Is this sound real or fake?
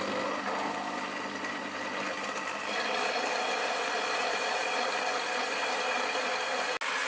real